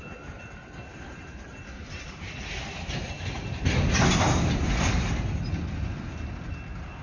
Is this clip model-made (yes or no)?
no